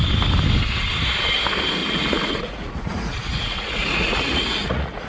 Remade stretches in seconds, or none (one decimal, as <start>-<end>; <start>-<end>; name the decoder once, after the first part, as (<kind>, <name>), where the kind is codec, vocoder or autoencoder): 1.8-5.1 (vocoder, Vocos)